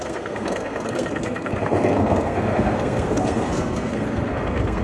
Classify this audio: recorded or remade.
remade